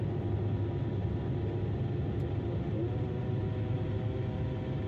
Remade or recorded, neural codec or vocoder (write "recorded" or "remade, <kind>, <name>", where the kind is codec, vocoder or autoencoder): recorded